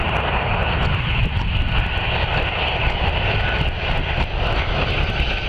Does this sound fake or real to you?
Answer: real